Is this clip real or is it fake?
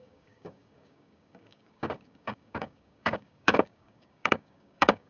fake